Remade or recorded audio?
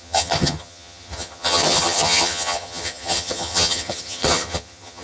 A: remade